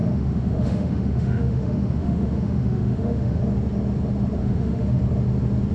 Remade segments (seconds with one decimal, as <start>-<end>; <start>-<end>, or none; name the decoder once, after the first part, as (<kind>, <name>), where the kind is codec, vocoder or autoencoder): 0.0-3.4 (autoencoder, DAC-VAE); 4.4-5.0